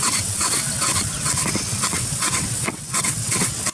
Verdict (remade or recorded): remade